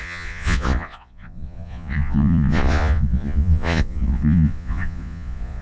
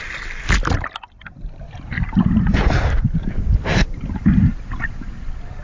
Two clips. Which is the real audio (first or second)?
second